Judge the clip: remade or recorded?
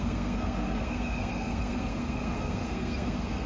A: remade